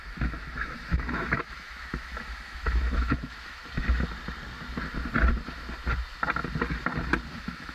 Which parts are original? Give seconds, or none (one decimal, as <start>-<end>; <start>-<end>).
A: 3.6-7.3